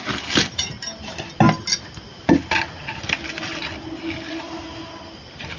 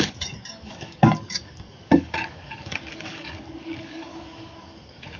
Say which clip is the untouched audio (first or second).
first